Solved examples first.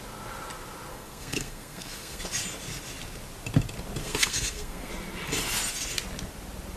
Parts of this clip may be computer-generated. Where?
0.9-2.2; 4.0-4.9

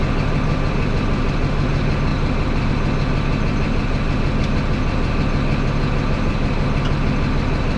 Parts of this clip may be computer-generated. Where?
none

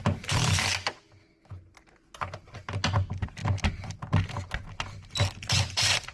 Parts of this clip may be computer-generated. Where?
none

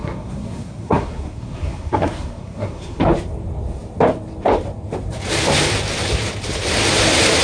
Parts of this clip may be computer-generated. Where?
0.0-3.0

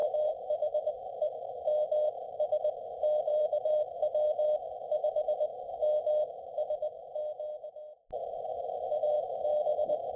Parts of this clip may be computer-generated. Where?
0.0-0.9; 3.3-3.9